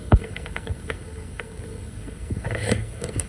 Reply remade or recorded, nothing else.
remade